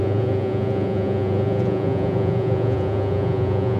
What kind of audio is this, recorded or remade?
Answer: remade